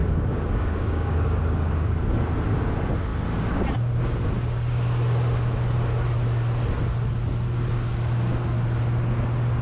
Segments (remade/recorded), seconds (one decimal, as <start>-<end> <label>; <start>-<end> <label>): 0.0-1.7 remade; 1.7-9.6 recorded